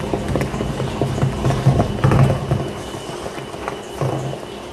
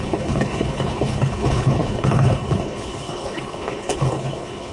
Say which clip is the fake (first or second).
second